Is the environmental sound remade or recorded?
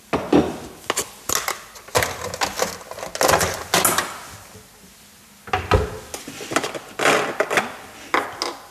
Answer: recorded